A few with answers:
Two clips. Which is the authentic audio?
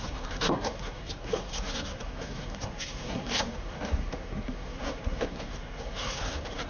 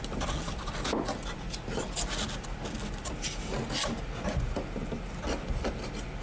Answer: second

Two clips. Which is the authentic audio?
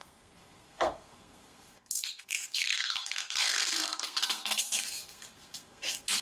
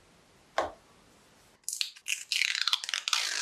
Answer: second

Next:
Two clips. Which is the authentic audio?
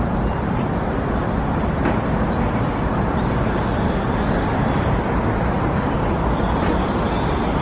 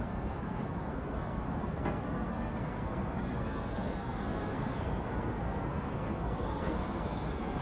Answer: first